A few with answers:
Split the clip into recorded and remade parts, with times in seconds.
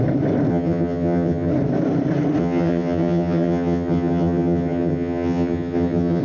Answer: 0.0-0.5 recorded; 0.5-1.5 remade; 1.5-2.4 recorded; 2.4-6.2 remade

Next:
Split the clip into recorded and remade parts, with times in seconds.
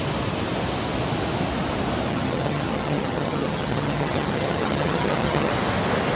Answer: 0.0-2.1 recorded; 2.1-5.5 remade; 5.5-6.2 recorded